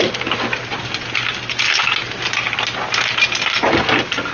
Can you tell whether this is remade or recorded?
recorded